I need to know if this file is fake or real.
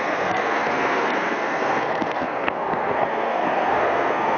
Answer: fake